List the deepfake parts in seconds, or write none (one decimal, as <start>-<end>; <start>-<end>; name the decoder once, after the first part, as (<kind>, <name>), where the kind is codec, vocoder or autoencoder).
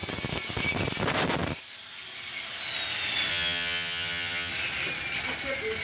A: 3.3-4.5 (vocoder, HiFi-GAN)